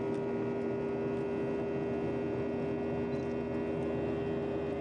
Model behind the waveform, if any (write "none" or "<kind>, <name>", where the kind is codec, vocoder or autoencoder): none